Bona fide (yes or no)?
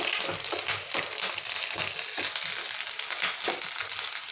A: yes